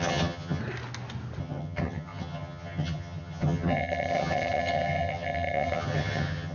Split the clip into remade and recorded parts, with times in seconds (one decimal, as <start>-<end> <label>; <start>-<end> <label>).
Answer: 0.0-0.6 remade; 0.6-1.4 recorded; 1.4-6.5 remade